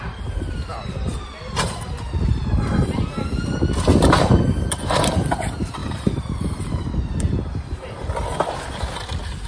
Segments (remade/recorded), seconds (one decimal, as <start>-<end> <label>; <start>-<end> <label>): 0.0-5.8 recorded; 5.8-7.0 remade; 7.0-9.5 recorded